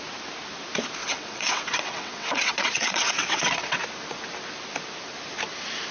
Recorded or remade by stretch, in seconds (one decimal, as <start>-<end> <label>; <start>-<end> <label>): 0.0-1.0 recorded; 1.0-3.8 remade; 3.8-5.9 recorded